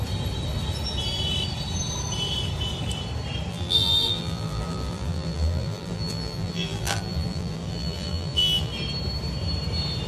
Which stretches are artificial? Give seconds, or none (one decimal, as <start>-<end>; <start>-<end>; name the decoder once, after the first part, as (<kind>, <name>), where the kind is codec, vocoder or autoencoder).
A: 3.5-8.7 (vocoder, BigVGAN v2)